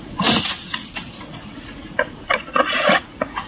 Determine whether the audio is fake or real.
fake